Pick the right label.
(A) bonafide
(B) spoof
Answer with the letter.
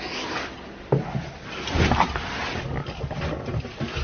A